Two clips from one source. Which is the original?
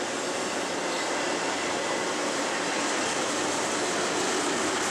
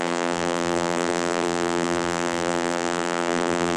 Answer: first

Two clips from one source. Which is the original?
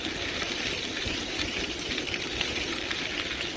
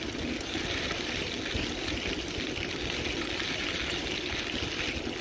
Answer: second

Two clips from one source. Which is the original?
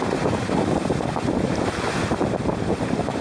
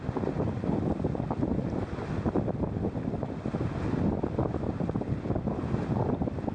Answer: second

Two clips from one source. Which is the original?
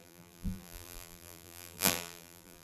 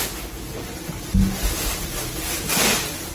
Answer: second